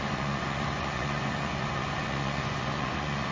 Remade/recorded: remade